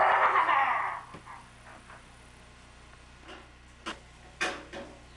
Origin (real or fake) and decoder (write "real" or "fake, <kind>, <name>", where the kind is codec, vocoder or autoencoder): real